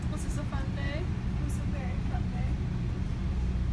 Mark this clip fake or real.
real